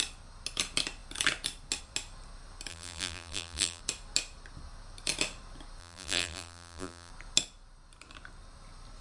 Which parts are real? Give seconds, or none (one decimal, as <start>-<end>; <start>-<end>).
0.0-2.7; 3.8-5.8; 7.1-9.0